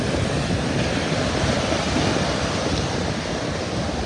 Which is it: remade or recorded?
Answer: recorded